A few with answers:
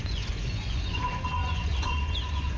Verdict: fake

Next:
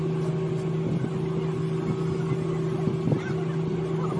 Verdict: real